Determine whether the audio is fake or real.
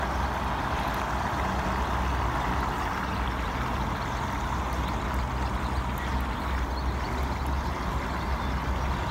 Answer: real